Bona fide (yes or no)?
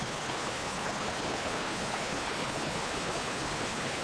no